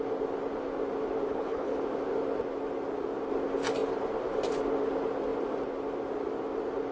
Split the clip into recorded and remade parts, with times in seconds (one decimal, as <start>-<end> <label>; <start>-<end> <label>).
0.0-1.3 recorded; 1.3-1.8 remade; 1.8-6.9 recorded